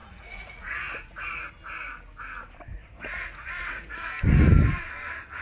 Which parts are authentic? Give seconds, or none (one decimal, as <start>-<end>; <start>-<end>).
1.5-2.7; 4.1-5.4